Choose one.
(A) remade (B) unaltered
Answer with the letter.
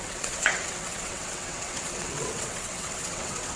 A